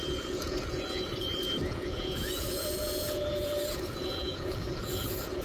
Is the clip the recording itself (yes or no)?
no